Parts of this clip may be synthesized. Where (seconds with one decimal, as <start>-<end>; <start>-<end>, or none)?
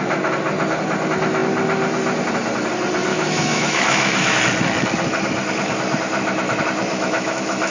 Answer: 3.1-4.4; 6.9-7.7